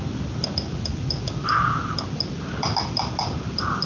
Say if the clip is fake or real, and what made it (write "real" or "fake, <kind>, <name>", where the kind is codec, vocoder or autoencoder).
real